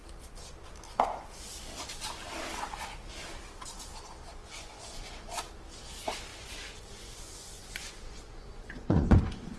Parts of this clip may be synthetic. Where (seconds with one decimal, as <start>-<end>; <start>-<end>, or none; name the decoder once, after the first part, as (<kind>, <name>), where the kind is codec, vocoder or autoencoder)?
4.4-5.4 (vocoder, Vocos); 6.3-9.2